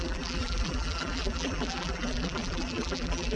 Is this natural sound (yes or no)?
no